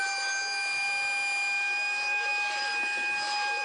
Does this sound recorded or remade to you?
recorded